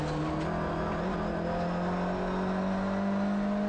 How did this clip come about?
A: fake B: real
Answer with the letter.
B